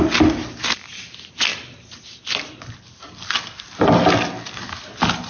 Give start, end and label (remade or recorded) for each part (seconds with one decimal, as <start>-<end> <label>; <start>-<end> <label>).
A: 0.0-5.3 recorded